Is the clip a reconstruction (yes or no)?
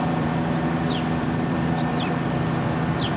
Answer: yes